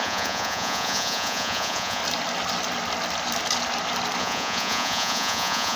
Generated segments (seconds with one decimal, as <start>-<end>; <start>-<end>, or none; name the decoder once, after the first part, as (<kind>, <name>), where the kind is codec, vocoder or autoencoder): 0.0-2.0 (vocoder, Vocos); 4.2-5.8

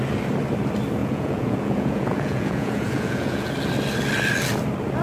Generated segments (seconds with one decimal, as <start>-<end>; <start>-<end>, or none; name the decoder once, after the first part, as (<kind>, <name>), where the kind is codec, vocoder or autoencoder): 1.0-3.5 (vocoder, Vocos)

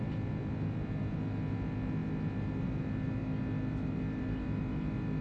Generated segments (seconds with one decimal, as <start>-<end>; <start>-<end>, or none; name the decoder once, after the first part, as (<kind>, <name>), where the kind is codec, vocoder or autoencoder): none

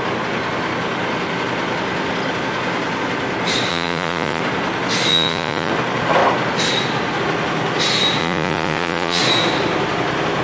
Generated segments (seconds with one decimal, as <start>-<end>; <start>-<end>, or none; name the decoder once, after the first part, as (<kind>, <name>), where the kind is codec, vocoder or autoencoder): 3.7-4.4 (vocoder, Vocos); 5.1-5.7; 8.2-9.2